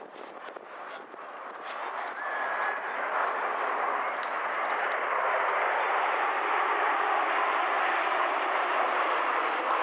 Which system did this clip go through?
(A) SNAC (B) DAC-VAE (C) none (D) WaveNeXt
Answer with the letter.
C